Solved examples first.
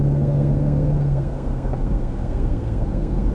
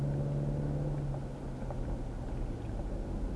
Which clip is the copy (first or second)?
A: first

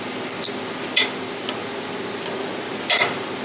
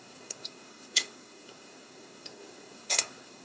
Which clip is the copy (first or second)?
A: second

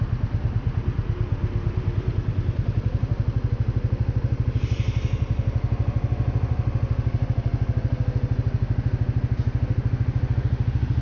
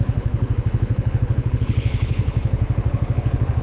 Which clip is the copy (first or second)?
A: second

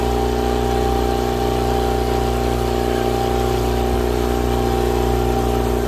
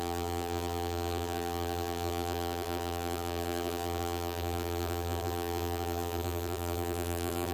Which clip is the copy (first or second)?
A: second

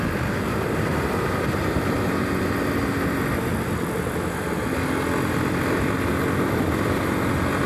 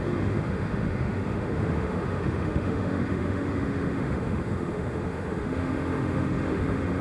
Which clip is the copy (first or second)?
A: second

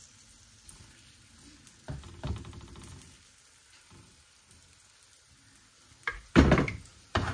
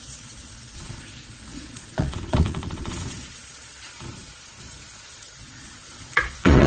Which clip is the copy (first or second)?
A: second